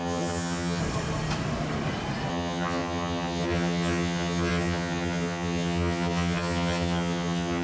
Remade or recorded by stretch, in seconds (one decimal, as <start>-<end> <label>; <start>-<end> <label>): 0.0-0.8 remade; 0.8-2.3 recorded; 2.3-7.6 remade